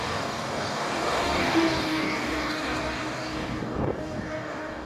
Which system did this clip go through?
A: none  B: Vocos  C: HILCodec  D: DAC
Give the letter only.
D